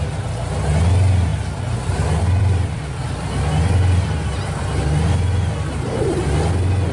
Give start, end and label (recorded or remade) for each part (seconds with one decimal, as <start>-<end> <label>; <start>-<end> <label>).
0.0-1.3 recorded; 1.3-3.0 remade; 3.0-6.9 recorded